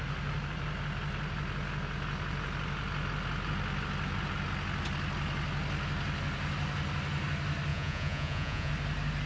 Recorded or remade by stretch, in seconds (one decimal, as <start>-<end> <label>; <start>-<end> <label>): 0.0-7.7 recorded; 7.7-8.7 remade; 8.7-9.3 recorded